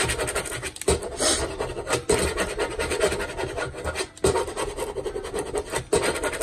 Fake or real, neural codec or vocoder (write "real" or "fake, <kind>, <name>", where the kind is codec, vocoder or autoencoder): real